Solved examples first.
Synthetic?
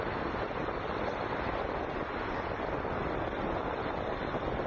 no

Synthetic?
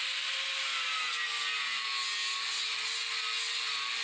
no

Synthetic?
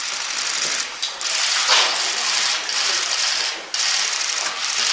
no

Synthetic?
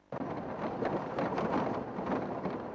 no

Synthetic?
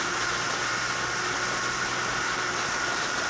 no